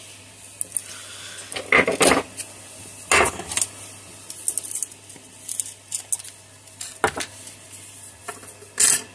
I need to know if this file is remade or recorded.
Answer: recorded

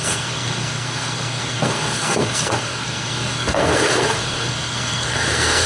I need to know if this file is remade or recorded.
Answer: remade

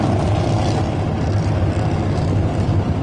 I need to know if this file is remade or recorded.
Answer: recorded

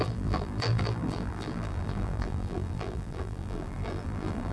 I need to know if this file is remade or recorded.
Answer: remade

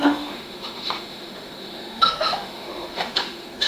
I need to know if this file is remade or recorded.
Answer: remade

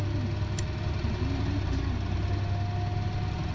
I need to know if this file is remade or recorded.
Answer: recorded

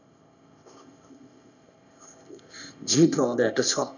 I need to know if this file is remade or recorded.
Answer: remade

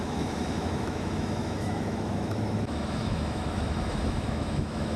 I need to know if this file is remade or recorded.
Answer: remade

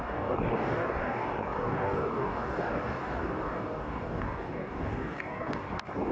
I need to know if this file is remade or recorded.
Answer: remade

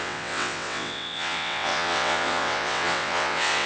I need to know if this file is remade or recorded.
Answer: remade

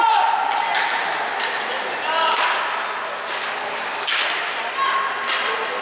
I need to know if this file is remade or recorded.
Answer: recorded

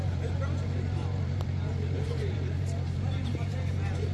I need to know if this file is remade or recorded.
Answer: remade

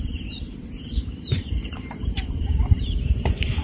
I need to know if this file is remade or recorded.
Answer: remade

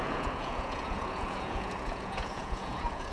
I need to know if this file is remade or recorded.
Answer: remade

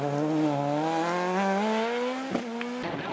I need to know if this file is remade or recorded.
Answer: recorded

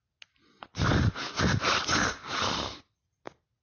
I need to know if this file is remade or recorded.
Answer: recorded